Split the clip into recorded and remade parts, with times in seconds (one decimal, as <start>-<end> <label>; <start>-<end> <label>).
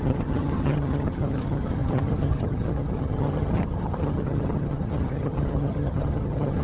0.0-6.6 remade